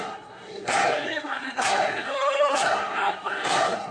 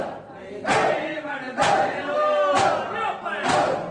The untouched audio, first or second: second